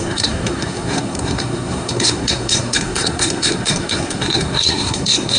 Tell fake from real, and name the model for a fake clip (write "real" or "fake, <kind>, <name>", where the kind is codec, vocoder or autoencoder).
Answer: fake, codec, SNAC